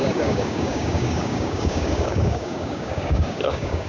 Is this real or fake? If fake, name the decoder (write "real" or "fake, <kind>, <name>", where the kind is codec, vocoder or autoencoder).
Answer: fake, codec, DAC